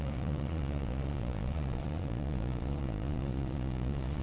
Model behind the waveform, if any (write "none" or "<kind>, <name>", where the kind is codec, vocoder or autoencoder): vocoder, Vocos